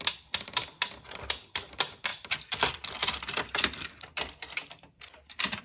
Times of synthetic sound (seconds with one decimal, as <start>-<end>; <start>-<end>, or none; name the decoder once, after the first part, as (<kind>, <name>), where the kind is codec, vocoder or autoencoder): 2.1-5.6 (vocoder, BigVGAN v2)